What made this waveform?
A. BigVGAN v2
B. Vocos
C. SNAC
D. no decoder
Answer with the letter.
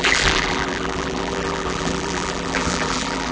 A